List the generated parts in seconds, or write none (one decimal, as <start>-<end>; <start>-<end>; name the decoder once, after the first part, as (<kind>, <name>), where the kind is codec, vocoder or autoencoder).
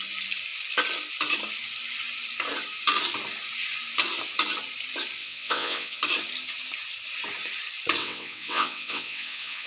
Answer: 5.2-6.0 (vocoder, WaveNeXt); 8.0-9.7